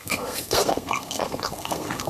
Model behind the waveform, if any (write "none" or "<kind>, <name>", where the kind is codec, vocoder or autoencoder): codec, SNAC